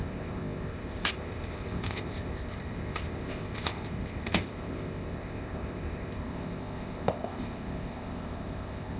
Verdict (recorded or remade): remade